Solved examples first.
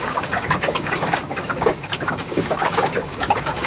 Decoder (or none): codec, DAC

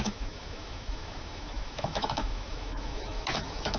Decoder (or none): autoencoder, DAC-VAE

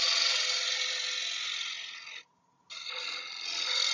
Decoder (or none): none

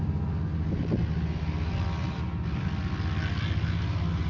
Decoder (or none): none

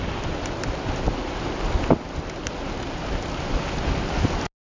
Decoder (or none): none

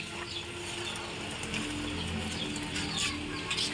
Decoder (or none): none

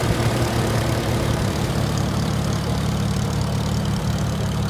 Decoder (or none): vocoder, BigVGAN v2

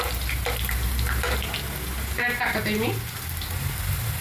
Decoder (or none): none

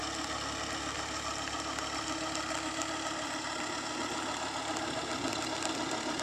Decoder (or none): none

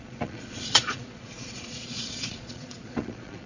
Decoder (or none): vocoder, Vocos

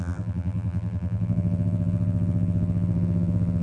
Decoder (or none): vocoder, BigVGAN v2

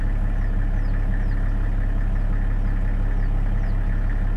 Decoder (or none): none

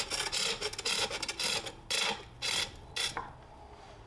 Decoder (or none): none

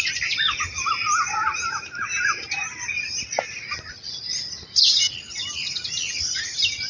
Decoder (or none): none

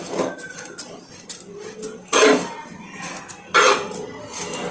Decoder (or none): none